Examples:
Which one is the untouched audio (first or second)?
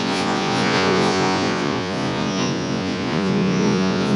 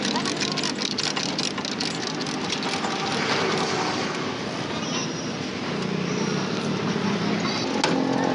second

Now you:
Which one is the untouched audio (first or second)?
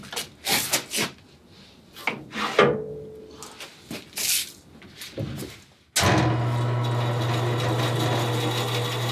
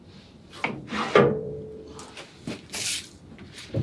first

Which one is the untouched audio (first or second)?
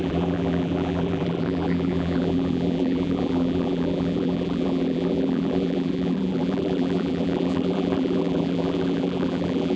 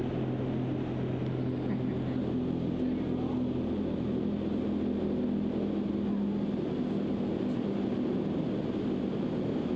second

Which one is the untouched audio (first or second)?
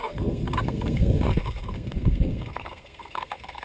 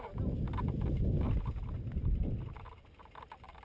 second